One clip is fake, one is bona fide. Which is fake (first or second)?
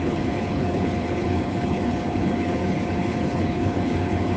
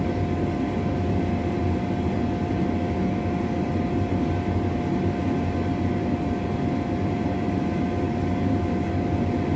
first